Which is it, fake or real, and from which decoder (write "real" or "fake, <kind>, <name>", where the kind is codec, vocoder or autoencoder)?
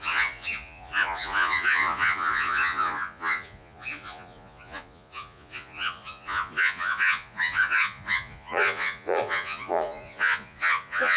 fake, vocoder, Vocos